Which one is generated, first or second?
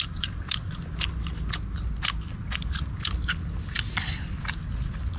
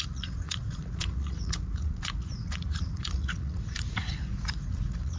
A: second